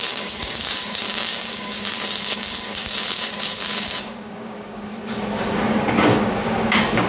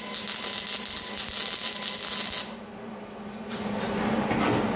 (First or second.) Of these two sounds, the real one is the second